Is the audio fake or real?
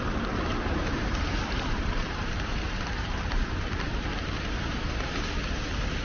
fake